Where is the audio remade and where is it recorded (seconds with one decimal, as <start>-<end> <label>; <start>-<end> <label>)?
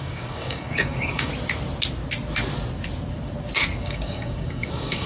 0.0-1.3 remade; 1.3-3.8 recorded; 3.8-5.1 remade